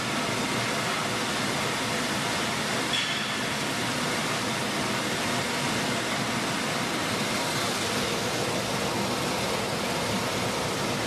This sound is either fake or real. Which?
real